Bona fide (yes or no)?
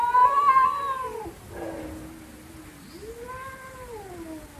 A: yes